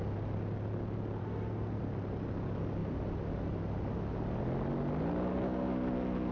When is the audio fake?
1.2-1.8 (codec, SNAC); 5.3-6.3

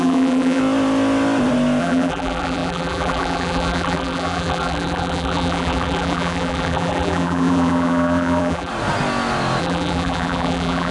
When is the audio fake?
0.0-0.6 (vocoder, BigVGAN v2); 1.8-8.7; 9.6-10.9

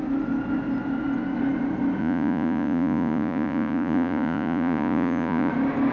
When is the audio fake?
2.0-5.5 (vocoder, Vocos)

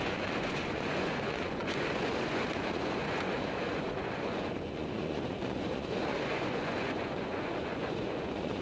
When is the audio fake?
0.0-8.6 (vocoder, Vocos)

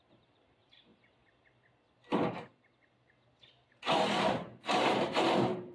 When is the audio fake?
0.0-0.9 (vocoder, BigVGAN v2); 3.7-5.7